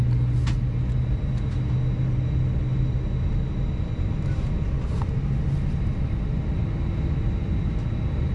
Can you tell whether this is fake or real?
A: real